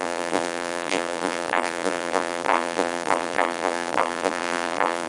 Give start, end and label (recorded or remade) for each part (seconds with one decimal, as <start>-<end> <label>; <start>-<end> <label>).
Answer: 0.0-5.1 remade